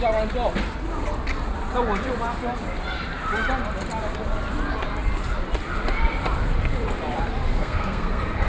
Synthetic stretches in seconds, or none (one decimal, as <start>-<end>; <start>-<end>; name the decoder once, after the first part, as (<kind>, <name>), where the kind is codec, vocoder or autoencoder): 7.5-8.5 (codec, SNAC)